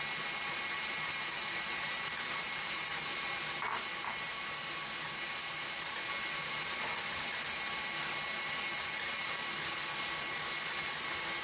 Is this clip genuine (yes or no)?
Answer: yes